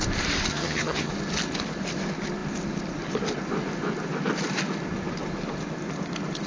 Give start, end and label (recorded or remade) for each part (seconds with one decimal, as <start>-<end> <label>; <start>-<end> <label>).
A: 0.0-0.5 recorded; 0.5-1.1 remade; 1.1-6.5 recorded